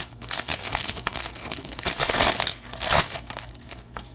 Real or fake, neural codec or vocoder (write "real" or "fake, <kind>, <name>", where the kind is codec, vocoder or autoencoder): fake, codec, SNAC